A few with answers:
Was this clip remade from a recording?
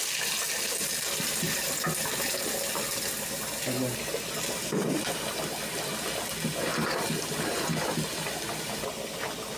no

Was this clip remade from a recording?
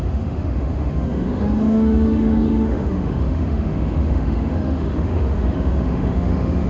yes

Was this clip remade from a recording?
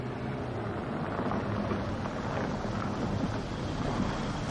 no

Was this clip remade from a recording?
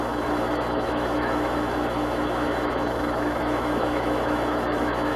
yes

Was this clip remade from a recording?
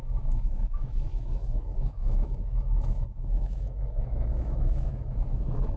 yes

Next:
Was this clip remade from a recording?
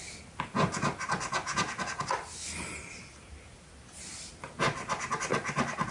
no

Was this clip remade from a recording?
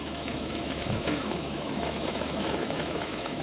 yes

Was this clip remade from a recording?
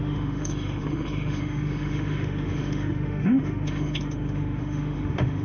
yes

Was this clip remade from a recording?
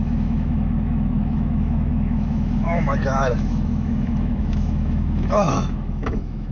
yes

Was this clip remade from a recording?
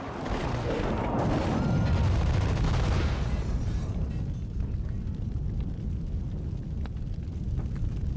no